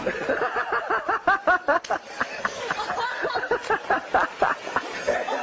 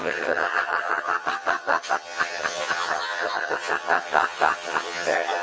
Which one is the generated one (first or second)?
second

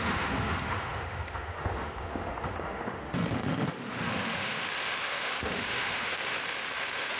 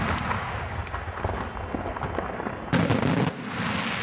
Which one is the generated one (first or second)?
first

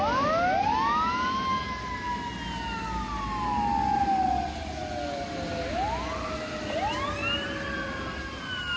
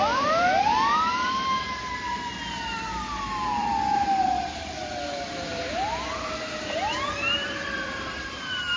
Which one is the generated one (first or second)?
second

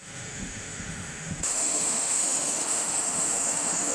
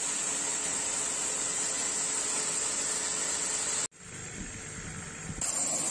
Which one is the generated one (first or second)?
first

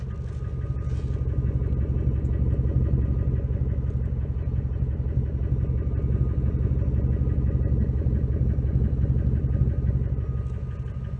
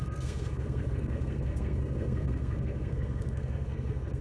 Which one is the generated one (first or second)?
second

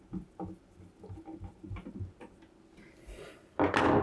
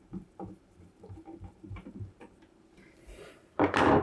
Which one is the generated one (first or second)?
second